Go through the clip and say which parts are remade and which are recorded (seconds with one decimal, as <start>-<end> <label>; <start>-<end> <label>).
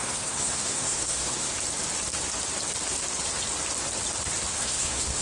0.0-1.5 remade; 1.5-4.6 recorded; 4.6-5.2 remade